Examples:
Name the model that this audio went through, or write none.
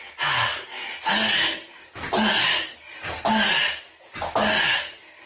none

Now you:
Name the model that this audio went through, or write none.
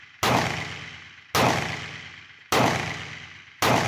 none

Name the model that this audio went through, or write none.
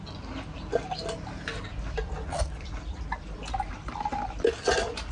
none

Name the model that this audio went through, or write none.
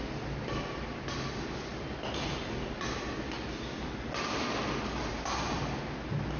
none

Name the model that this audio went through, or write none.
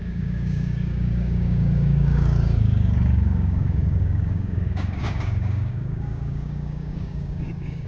codec, DAC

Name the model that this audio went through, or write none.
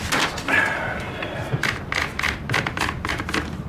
none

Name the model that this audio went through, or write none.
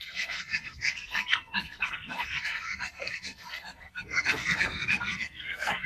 codec, SNAC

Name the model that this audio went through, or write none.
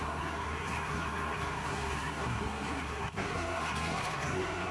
codec, SNAC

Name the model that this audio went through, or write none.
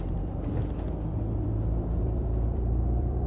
vocoder, BigVGAN v2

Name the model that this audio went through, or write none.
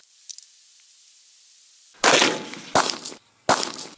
none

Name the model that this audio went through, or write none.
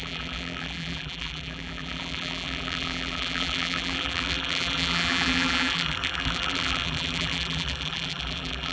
vocoder, BigVGAN v2